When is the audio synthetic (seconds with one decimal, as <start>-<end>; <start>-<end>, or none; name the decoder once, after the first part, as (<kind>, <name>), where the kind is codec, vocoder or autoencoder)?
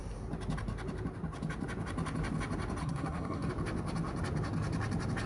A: 2.8-3.5 (codec, SNAC)